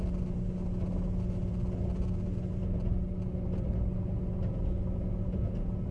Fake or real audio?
real